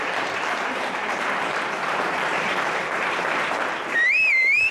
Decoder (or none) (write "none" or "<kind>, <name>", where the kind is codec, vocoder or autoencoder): vocoder, BigVGAN v2